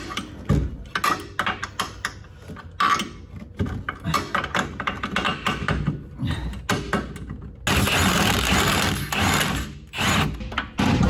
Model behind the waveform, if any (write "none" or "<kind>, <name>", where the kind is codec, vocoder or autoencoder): none